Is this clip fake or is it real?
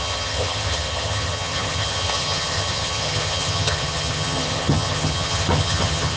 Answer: fake